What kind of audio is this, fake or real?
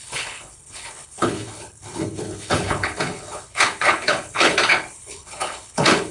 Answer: fake